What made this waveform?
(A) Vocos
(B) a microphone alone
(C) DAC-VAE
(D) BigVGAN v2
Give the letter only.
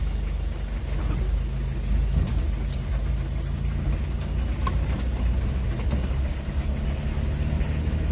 B